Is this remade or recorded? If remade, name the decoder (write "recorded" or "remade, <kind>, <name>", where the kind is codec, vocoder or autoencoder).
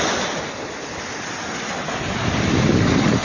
recorded